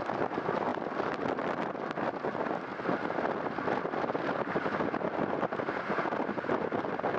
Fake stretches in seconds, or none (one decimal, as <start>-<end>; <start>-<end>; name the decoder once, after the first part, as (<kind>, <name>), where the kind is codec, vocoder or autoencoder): none